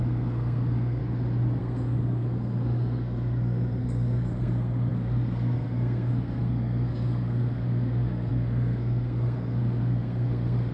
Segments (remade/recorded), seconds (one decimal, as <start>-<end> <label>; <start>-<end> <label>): 0.0-1.0 remade; 1.0-1.6 recorded; 1.6-10.7 remade